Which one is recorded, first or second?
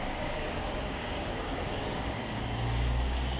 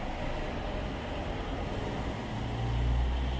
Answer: second